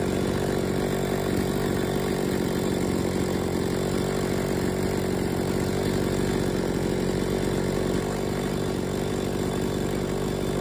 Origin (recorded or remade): recorded